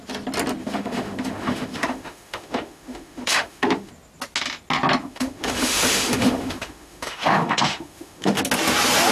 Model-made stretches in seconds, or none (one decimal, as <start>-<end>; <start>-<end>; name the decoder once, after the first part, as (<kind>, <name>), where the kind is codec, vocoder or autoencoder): 0.6-3.9 (autoencoder, DAC-VAE); 5.0-8.4